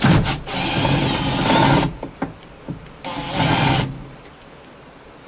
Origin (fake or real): real